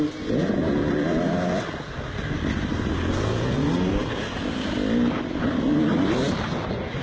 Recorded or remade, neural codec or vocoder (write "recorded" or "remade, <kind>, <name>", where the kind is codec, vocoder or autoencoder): recorded